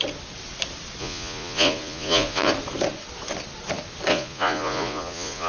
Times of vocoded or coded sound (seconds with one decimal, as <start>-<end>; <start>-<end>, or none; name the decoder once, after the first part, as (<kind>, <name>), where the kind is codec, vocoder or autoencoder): 1.0-2.5 (vocoder, Vocos); 4.1-5.5